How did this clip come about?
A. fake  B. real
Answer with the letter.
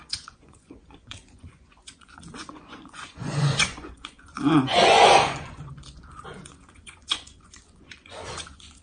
A